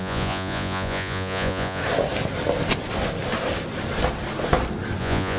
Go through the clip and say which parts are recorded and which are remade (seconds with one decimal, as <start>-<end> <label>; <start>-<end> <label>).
0.0-1.8 remade; 1.8-5.0 recorded; 5.0-5.4 remade